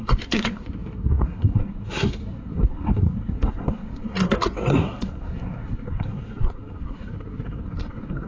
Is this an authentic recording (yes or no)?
no